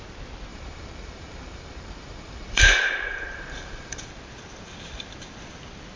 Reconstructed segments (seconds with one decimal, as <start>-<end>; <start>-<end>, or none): 0.5-4.1

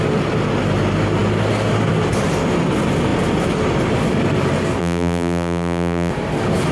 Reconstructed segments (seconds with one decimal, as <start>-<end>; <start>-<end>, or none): 4.8-6.1

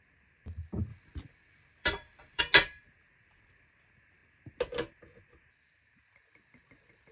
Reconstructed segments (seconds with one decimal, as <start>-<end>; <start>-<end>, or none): 0.9-2.4

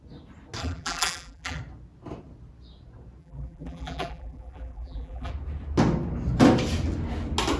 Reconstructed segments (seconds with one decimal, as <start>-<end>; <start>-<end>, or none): 0.6-1.6; 3.2-5.3

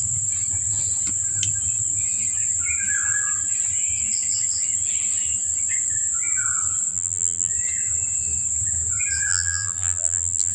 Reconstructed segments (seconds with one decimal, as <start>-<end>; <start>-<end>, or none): 6.9-7.5; 9.3-10.5